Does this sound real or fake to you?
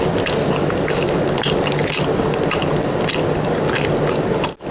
real